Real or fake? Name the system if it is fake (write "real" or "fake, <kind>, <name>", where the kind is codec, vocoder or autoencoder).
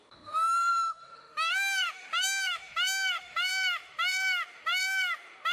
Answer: fake, autoencoder, DAC-VAE